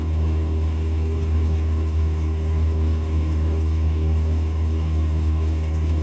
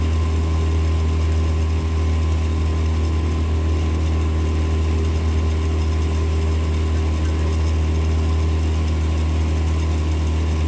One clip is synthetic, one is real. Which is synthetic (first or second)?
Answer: first